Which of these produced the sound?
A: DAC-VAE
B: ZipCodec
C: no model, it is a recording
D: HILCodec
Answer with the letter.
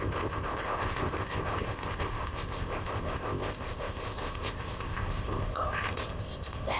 B